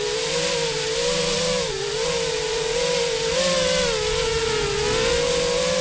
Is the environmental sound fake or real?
real